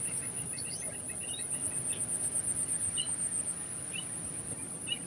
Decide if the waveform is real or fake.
fake